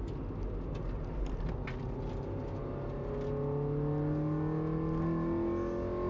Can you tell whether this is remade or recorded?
recorded